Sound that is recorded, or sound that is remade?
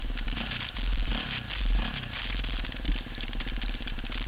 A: remade